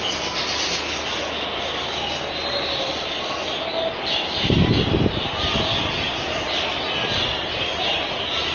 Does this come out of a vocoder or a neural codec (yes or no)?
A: no